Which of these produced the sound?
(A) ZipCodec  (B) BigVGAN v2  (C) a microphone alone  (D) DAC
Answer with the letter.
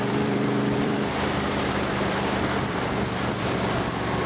B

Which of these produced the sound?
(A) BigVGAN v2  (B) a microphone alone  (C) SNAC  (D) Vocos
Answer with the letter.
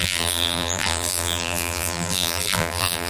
A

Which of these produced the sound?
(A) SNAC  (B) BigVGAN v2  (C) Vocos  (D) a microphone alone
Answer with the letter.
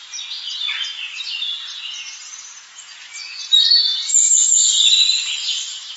D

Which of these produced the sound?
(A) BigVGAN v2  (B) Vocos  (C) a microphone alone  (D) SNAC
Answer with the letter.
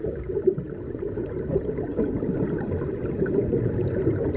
A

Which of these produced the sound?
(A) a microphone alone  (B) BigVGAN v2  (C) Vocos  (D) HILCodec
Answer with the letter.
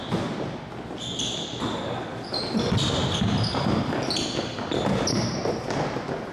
A